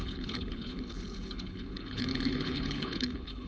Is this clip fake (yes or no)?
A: yes